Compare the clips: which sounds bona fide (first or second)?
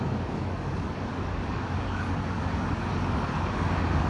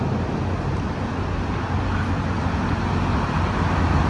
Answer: second